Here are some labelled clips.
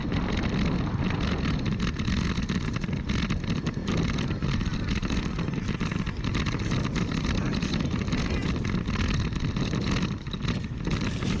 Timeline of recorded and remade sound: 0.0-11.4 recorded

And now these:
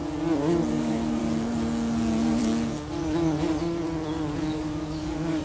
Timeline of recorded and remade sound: 0.0-0.7 recorded; 0.7-1.2 remade; 1.2-4.4 recorded; 4.4-5.4 remade

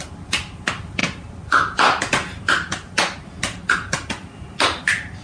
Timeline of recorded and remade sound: 0.0-5.2 recorded

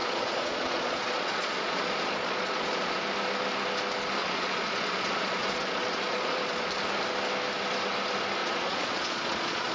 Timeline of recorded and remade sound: 0.0-3.0 remade; 3.0-4.2 recorded; 4.2-6.7 remade; 6.7-8.4 recorded; 8.4-9.7 remade

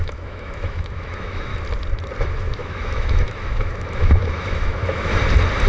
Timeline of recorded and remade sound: 0.0-1.5 remade; 1.5-2.2 recorded; 2.2-5.1 remade; 5.1-5.7 recorded

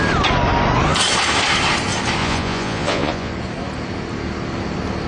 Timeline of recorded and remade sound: 0.0-2.2 recorded; 2.2-3.3 remade; 3.3-5.1 recorded

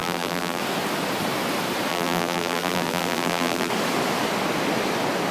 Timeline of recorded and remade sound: 0.0-0.6 remade; 0.6-1.9 recorded; 1.9-3.7 remade; 3.7-5.3 recorded